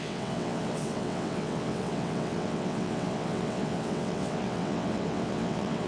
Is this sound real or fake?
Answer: fake